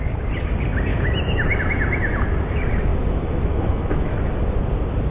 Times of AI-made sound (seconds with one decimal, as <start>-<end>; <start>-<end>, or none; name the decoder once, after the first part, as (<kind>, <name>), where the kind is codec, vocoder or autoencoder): 0.9-1.6 (autoencoder, DAC-VAE); 2.9-4.4